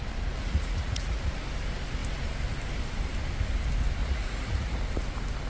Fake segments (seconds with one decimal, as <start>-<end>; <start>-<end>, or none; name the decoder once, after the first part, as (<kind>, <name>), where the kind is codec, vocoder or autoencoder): 0.4-1.2 (vocoder, Vocos); 4.0-4.8